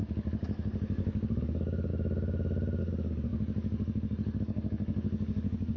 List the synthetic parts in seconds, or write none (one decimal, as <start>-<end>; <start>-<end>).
0.0-1.9; 2.8-5.8